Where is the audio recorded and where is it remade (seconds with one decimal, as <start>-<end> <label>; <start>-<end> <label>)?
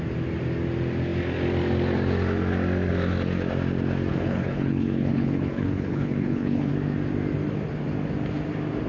0.0-4.1 recorded; 4.1-6.7 remade; 6.7-8.9 recorded